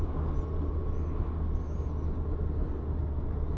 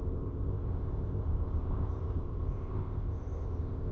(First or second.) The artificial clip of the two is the second